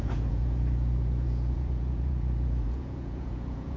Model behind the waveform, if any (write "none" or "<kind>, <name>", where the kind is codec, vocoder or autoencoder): vocoder, Vocos